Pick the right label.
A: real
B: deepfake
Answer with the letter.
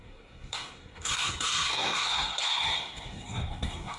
B